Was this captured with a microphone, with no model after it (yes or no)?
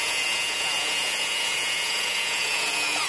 no